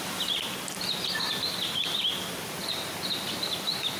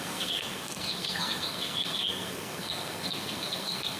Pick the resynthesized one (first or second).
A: second